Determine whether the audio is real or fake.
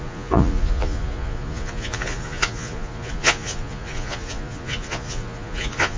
fake